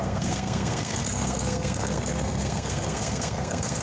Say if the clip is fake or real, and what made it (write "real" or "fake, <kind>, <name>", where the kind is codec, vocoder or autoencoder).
fake, codec, SNAC